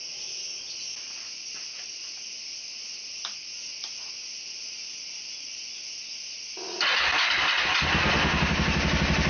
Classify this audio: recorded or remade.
recorded